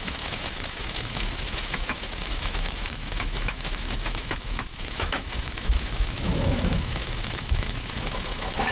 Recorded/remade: remade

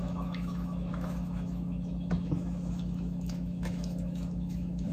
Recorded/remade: remade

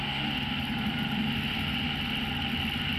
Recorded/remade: recorded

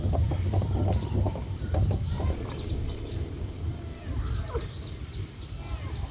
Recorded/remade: recorded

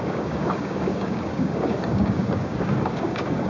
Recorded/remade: remade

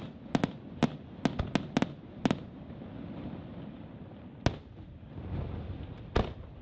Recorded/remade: recorded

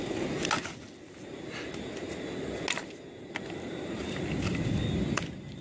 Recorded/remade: recorded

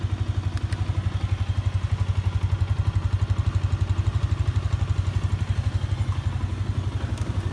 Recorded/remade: recorded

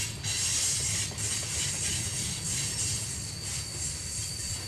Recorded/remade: recorded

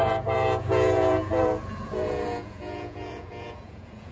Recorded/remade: remade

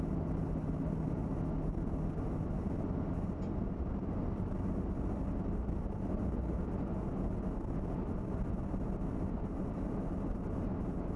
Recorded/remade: recorded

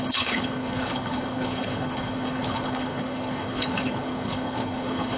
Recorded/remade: remade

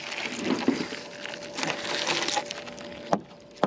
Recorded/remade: recorded